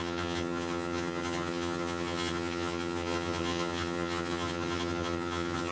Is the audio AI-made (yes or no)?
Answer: yes